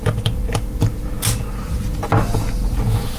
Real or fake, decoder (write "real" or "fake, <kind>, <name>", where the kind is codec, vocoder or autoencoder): real